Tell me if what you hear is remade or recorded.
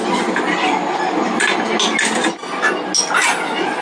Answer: recorded